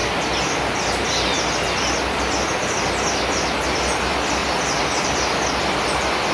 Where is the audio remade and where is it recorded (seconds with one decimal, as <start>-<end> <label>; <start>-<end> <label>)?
0.0-4.4 recorded; 4.4-6.3 remade